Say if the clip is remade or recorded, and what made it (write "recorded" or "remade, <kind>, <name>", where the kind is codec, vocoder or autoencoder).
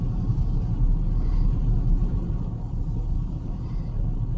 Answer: recorded